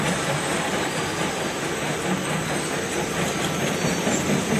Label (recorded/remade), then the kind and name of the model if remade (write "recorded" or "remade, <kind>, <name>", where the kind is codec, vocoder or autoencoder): recorded